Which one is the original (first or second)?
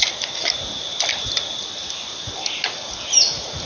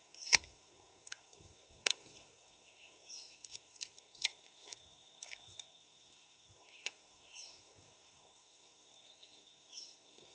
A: first